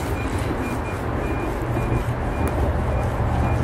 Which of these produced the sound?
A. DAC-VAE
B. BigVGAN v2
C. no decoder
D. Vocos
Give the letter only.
C